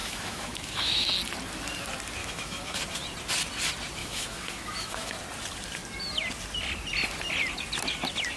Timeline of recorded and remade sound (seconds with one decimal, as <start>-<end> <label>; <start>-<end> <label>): 0.0-1.1 remade; 1.1-2.2 recorded; 2.2-2.8 remade; 2.8-4.0 recorded; 4.0-5.2 remade; 5.2-8.4 recorded